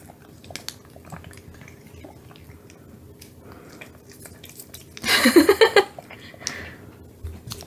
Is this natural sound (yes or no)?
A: yes